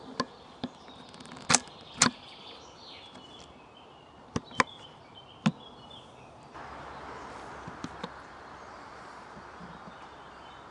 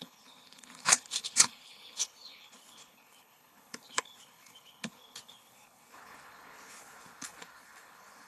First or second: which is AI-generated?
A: second